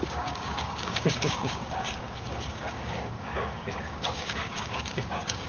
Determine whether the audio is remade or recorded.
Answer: remade